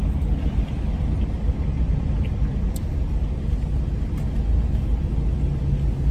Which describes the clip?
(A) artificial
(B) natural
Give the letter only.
B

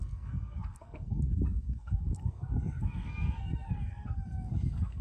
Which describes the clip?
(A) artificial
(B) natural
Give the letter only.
A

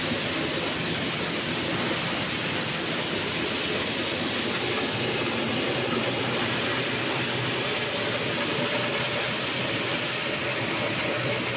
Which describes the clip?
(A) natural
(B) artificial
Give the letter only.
A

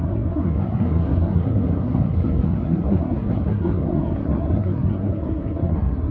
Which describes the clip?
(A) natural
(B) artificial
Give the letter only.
B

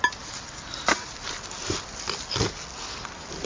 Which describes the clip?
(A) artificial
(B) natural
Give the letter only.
B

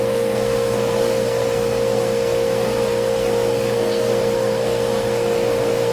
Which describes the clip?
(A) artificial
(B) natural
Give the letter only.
A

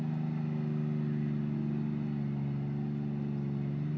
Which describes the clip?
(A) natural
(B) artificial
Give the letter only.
A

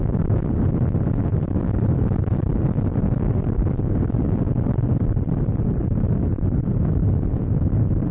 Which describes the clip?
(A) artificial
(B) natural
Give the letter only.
B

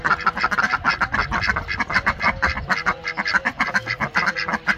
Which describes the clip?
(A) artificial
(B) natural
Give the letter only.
B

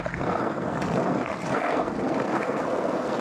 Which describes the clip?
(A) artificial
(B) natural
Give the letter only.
A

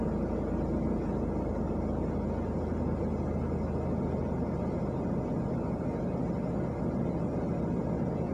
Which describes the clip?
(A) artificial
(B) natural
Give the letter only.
B